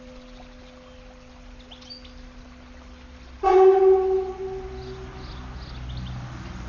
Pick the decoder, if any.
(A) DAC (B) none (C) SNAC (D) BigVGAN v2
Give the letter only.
B